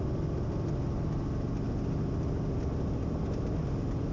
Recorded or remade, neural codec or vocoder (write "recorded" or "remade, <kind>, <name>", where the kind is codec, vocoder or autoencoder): recorded